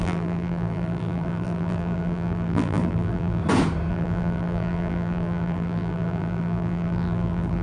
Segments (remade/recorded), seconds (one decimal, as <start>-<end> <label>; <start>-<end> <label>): 0.0-3.4 remade; 3.4-3.9 recorded; 3.9-7.6 remade